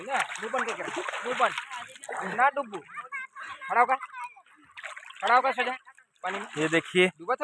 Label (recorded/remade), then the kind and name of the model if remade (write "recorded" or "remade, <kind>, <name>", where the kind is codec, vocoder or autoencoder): recorded